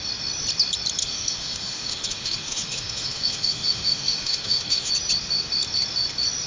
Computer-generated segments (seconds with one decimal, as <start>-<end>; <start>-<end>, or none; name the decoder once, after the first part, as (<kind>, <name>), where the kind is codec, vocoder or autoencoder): 1.0-4.9 (autoencoder, DAC-VAE)